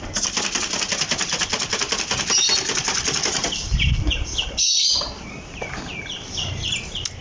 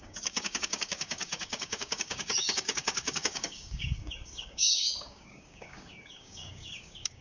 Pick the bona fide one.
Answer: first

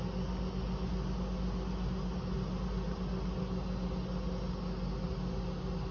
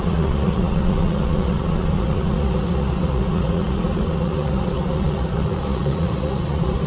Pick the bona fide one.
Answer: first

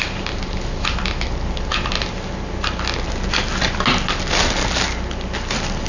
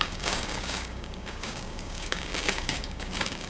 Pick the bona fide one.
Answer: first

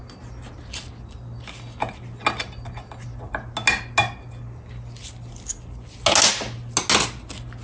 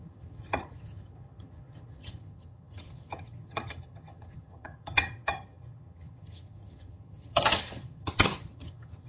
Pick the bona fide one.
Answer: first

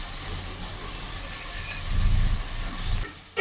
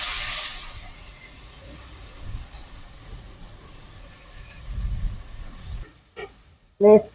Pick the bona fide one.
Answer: first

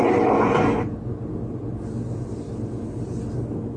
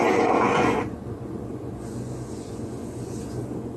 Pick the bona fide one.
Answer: first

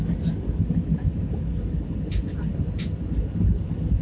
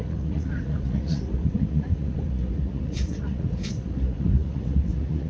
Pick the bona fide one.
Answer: first